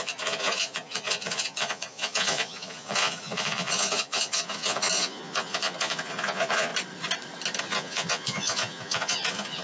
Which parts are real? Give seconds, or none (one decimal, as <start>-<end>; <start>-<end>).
6.7-7.6